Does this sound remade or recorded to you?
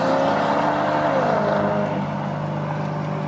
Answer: recorded